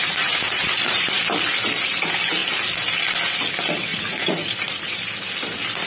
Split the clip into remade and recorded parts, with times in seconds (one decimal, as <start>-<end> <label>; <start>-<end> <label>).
0.0-1.2 remade; 1.2-3.9 recorded; 3.9-5.0 remade; 5.0-5.9 recorded